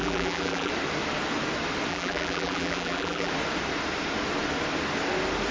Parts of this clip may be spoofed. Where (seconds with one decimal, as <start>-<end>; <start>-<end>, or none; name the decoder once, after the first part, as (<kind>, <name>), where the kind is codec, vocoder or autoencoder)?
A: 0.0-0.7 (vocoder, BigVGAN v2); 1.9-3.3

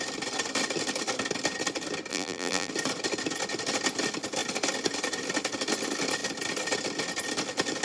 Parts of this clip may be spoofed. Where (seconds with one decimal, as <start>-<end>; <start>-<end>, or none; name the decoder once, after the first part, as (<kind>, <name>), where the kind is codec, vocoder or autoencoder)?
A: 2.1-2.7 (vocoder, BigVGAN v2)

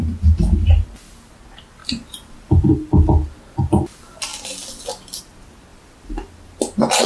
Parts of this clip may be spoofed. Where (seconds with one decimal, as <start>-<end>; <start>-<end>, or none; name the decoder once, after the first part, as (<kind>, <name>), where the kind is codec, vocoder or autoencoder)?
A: 1.8-2.7 (vocoder, BigVGAN v2); 5.7-6.4

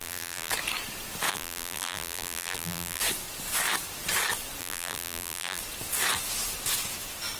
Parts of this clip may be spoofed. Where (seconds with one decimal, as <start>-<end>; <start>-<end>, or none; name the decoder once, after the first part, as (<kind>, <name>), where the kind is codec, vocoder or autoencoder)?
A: 0.0-0.5 (vocoder, BigVGAN v2); 1.3-3.0; 4.6-5.6

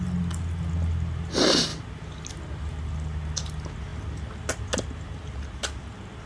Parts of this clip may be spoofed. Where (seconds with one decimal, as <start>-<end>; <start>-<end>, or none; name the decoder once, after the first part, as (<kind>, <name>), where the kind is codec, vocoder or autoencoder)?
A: none

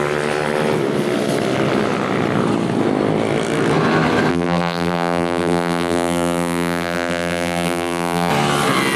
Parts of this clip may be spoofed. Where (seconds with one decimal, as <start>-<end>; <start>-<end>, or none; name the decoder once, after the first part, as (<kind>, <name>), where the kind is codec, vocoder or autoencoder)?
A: 4.3-8.3 (vocoder, BigVGAN v2)